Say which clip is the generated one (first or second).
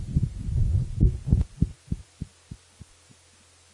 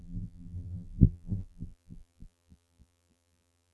second